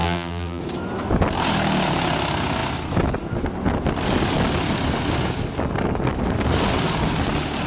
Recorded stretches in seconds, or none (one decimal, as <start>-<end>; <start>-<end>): 0.6-7.7